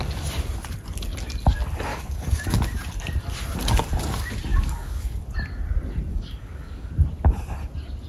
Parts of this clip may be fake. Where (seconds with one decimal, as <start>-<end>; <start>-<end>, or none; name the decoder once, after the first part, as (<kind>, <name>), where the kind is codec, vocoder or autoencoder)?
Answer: 1.9-2.8 (codec, DAC); 4.5-5.2; 6.1-6.9